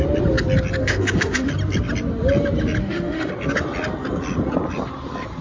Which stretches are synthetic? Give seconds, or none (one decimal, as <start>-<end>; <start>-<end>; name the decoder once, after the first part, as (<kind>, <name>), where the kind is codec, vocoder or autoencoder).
0.8-1.5 (autoencoder, DAC-VAE); 2.8-3.3

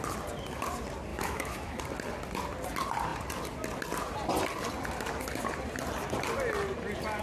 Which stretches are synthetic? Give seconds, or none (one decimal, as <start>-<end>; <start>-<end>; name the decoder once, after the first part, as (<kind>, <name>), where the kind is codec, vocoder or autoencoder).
1.1-1.8 (autoencoder, DAC-VAE)

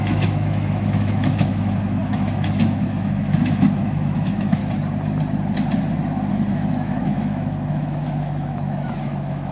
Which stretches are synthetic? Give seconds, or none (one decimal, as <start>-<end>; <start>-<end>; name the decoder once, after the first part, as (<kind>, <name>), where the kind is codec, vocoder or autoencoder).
0.0-4.6 (autoencoder, DAC-VAE); 6.3-9.5

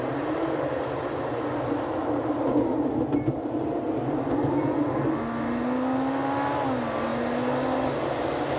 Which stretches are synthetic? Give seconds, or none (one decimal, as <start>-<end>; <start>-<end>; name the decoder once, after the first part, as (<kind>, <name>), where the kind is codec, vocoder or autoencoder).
none

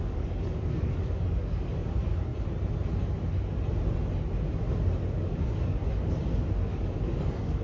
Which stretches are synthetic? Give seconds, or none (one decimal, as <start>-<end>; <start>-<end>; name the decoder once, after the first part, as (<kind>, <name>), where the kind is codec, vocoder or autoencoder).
0.0-2.3 (codec, DAC); 5.1-5.8; 6.5-7.6

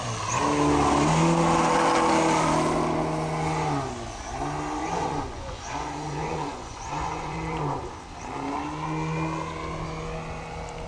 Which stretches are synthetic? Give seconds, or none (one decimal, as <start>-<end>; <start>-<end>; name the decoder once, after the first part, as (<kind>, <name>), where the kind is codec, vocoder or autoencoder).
4.8-7.9 (vocoder, Vocos)

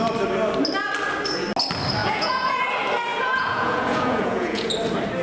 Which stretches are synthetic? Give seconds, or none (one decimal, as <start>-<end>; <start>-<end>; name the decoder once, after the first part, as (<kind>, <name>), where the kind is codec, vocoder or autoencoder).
2.0-2.6 (vocoder, Vocos); 3.1-4.7

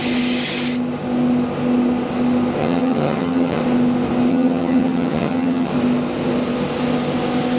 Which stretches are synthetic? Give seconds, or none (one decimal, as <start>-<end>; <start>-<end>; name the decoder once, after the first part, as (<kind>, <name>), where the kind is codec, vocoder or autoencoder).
2.6-3.6 (vocoder, HiFi-GAN); 4.3-5.7